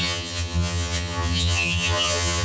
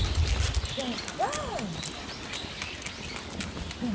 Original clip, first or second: second